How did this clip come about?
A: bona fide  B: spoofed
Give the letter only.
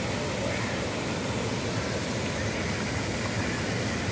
A